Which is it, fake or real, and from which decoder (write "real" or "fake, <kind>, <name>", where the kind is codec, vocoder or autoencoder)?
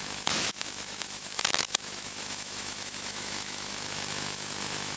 fake, autoencoder, DAC-VAE